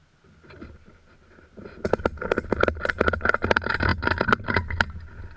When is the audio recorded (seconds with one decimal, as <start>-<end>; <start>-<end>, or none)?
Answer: 0.0-5.4